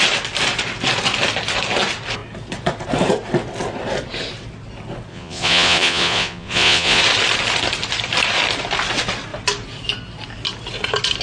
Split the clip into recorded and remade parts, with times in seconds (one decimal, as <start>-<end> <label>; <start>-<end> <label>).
0.0-5.1 recorded; 5.1-7.0 remade; 7.0-11.2 recorded